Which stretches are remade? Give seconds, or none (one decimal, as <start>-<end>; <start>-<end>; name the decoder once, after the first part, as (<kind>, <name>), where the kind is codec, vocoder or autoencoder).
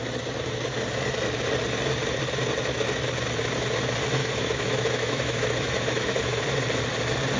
4.2-6.4 (autoencoder, DAC-VAE)